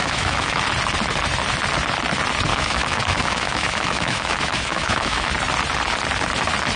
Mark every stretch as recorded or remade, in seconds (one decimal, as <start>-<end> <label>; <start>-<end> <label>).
0.0-0.6 remade; 0.6-2.5 recorded; 2.5-5.3 remade; 5.3-6.8 recorded